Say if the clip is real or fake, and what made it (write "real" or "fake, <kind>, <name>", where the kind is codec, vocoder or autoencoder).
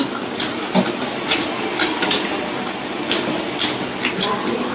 real